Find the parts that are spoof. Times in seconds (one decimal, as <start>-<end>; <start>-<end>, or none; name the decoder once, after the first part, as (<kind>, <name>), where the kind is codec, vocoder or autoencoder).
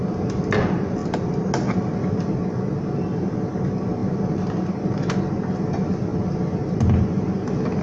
none